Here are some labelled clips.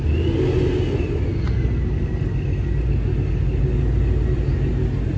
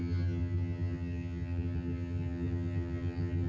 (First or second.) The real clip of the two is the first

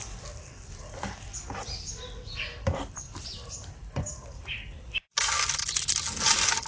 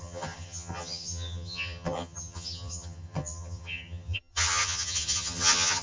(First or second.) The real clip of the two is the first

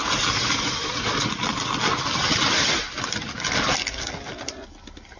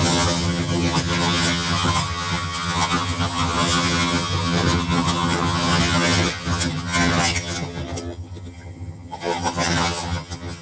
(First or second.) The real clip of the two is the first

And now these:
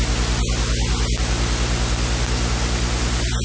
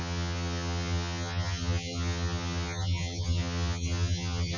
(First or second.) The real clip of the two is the first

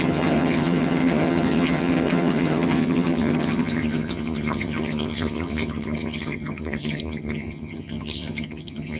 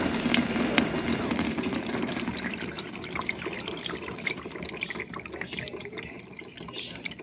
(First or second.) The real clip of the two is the second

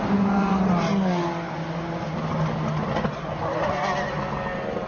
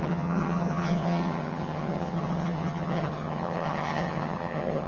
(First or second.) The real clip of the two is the first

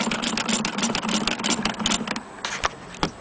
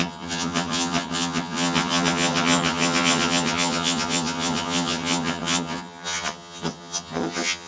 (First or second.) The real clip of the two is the first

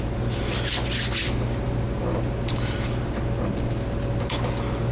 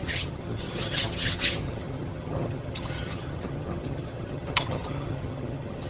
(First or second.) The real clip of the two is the first